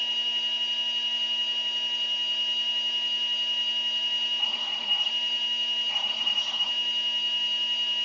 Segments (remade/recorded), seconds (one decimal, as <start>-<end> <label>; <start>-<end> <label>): 0.0-4.4 recorded; 4.4-5.1 remade; 5.1-5.9 recorded; 5.9-6.7 remade; 6.7-8.0 recorded